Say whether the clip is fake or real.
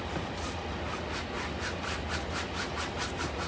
real